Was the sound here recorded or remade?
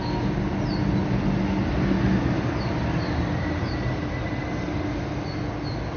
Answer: recorded